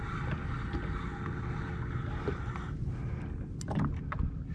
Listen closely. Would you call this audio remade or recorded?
recorded